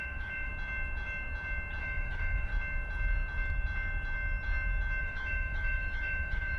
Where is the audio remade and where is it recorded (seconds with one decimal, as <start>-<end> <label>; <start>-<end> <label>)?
0.0-0.5 remade; 0.5-1.8 recorded; 1.8-2.5 remade; 2.5-5.0 recorded; 5.0-6.6 remade